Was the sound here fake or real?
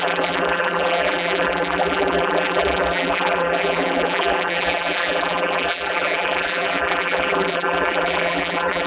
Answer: fake